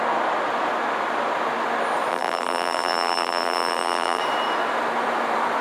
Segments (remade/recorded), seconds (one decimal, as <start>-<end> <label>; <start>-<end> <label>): 0.0-2.1 recorded; 2.1-4.2 remade; 4.2-5.6 recorded